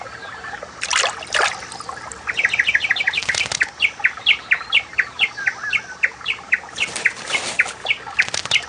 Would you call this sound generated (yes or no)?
no